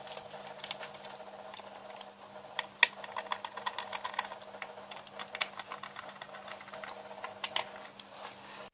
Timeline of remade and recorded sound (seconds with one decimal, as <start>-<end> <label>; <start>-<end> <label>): 0.0-8.7 recorded